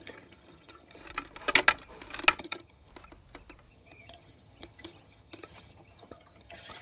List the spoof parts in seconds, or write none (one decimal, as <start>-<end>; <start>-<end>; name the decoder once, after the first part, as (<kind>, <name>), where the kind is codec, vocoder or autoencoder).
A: 0.0-1.0 (vocoder, HiFi-GAN); 2.4-2.9; 3.7-6.8